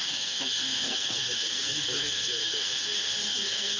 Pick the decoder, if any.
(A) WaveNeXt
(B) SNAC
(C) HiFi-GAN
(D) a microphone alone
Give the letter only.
B